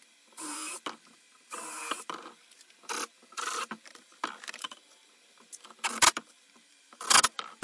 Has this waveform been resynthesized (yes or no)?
no